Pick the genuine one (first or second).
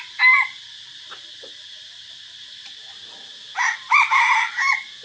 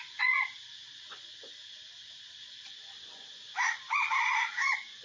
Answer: first